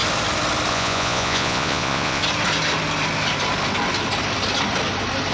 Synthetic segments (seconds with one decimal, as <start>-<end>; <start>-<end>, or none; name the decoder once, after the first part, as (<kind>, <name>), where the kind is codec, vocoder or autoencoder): 0.7-2.2 (vocoder, Vocos)